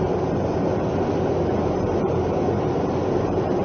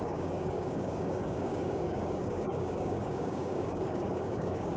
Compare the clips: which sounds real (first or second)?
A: first